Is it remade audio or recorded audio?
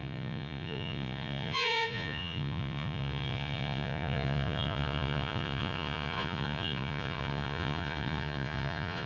remade